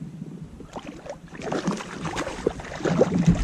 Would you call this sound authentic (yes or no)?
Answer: yes